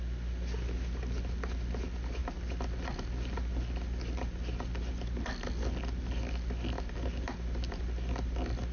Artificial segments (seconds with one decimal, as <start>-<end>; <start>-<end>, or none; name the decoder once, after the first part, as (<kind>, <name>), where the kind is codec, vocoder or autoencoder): none